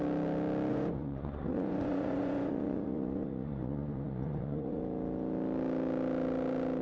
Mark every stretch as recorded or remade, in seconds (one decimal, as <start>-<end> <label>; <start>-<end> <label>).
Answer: 0.0-0.7 recorded; 0.7-4.8 remade; 4.8-6.8 recorded